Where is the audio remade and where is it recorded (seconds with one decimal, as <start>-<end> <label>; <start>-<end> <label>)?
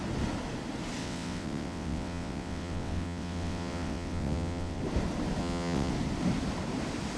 0.0-1.0 recorded; 1.0-4.8 remade; 4.8-5.4 recorded; 5.4-5.9 remade; 5.9-7.2 recorded